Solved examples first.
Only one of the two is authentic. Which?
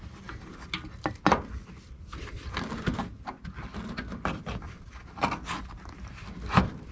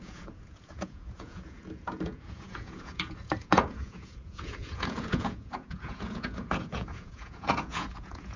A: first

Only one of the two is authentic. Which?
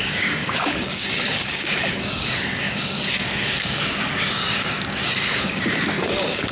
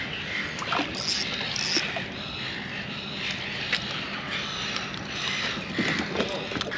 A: second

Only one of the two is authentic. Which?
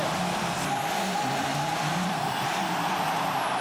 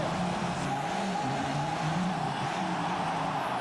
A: second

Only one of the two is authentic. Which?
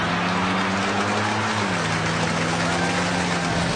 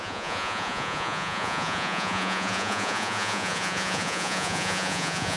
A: first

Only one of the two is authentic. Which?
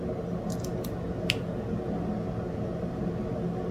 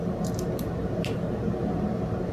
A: first